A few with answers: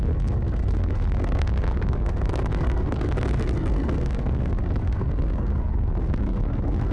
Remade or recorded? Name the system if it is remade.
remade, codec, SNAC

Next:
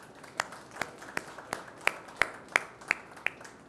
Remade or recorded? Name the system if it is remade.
recorded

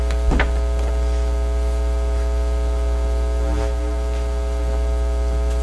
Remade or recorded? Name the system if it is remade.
recorded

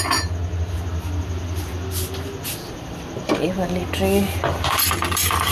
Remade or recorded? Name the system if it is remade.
recorded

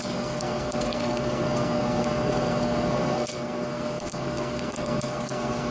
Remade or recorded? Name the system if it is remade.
remade, codec, SNAC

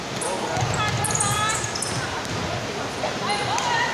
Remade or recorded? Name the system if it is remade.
recorded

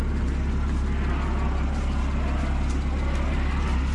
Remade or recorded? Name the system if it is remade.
recorded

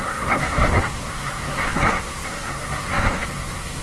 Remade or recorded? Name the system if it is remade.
remade, codec, SNAC